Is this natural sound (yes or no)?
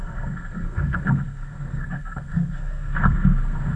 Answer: no